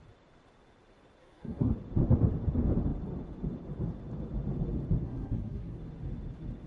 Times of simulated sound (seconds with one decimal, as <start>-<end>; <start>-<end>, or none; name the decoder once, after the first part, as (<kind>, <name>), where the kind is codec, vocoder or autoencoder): 1.2-1.7 (codec, SNAC); 5.0-5.8